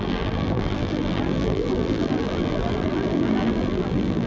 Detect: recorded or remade remade